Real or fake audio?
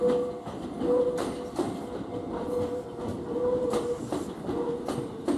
real